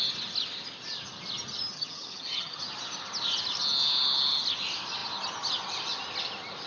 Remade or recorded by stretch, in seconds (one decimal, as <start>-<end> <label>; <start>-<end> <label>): 0.0-1.7 recorded; 1.7-2.6 remade; 2.6-6.7 recorded